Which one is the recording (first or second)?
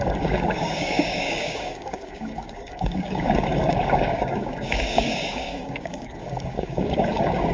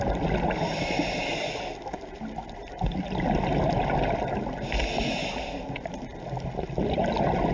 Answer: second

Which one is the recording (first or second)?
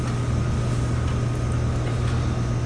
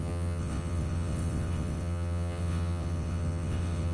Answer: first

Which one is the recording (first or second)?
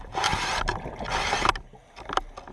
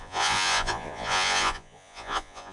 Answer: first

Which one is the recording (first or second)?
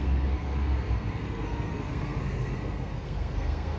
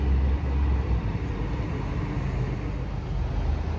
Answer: second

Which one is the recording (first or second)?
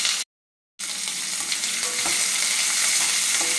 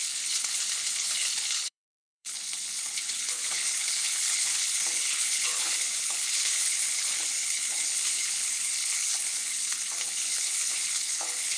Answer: first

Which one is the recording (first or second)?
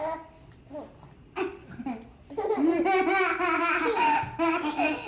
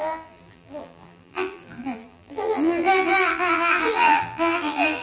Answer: first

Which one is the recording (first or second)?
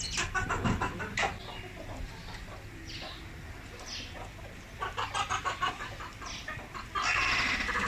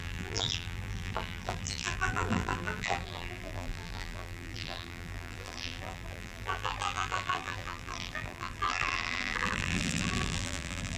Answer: first